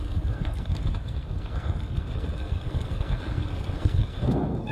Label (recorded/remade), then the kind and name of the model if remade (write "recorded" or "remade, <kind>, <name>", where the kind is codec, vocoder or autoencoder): remade, codec, SNAC